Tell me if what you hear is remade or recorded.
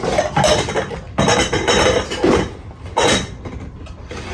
recorded